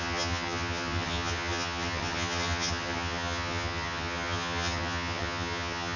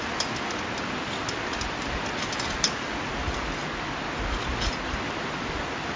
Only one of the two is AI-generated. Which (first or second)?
first